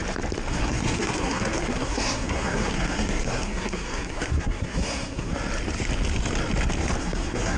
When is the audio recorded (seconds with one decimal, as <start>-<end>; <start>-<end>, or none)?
0.0-0.5; 5.3-7.0